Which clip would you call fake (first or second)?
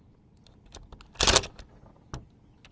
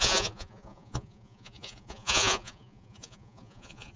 second